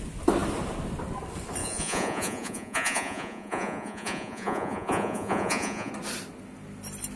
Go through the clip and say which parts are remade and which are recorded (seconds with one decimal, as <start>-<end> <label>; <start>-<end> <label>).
0.0-1.6 recorded; 1.6-5.9 remade; 5.9-7.2 recorded